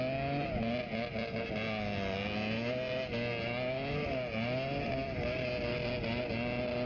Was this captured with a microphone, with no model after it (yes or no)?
yes